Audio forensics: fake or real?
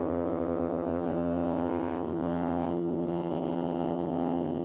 fake